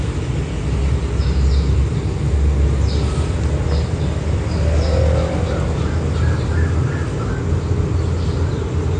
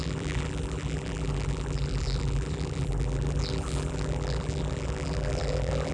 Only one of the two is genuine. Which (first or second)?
first